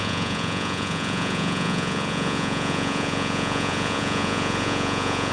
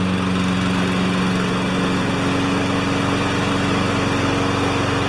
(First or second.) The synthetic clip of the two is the first